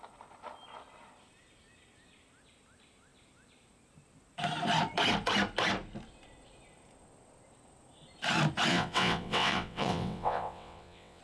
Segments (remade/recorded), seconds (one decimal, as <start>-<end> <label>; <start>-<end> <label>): 0.0-8.7 recorded; 8.7-11.2 remade